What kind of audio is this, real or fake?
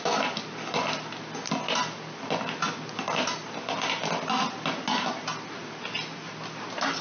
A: real